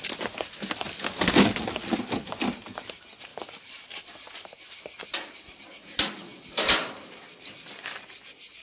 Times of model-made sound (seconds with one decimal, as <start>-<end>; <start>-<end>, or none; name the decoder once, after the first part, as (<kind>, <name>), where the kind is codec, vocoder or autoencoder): 3.3-5.6 (vocoder, BigVGAN v2)